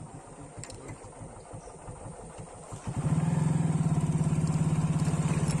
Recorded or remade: recorded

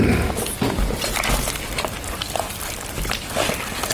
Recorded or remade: recorded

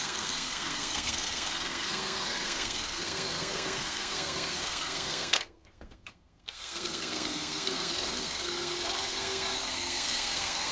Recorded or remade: remade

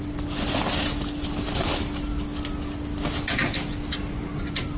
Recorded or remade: recorded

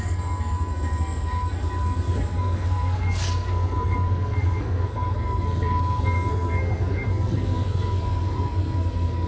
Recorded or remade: remade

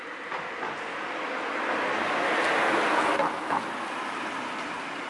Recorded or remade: recorded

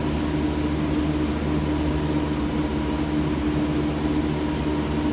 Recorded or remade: recorded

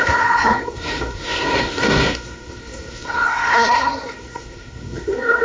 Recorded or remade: remade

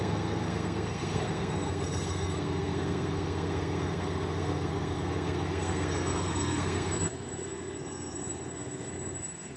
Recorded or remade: remade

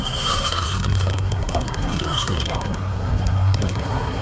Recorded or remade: remade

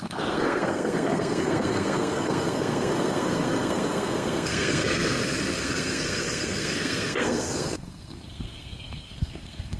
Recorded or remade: remade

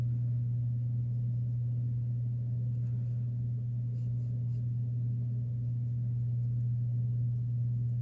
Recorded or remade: recorded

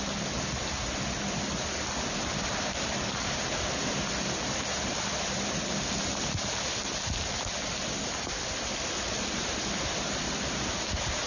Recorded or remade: recorded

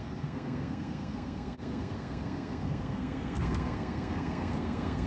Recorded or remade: remade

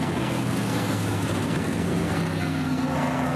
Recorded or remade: remade